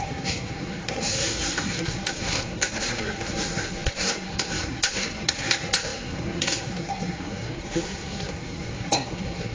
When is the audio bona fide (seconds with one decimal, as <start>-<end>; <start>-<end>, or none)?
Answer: none